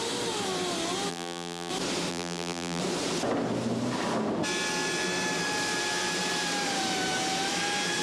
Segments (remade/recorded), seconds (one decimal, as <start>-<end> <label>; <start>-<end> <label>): 0.0-1.1 recorded; 1.1-1.7 remade; 1.7-2.1 recorded; 2.1-2.8 remade; 2.8-8.0 recorded